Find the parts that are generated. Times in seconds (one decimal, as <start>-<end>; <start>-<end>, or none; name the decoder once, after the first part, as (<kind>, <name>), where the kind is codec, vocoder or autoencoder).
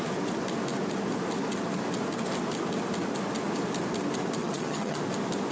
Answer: 4.4-5.0 (vocoder, HiFi-GAN)